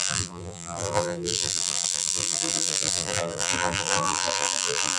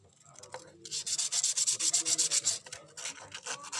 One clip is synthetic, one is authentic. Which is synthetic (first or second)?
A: first